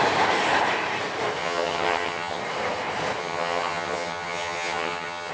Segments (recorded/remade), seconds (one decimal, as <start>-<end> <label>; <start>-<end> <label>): 0.0-1.4 recorded; 1.4-2.4 remade; 2.4-3.2 recorded; 3.2-5.3 remade